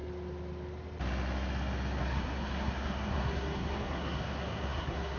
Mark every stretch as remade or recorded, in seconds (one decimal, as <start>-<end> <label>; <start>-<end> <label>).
0.0-2.0 recorded; 2.0-5.2 remade